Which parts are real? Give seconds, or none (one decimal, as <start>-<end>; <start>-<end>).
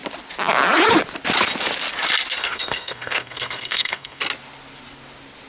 0.0-2.4; 4.2-5.5